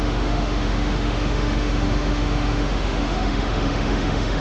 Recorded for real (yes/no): no